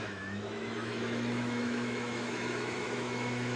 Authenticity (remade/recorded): remade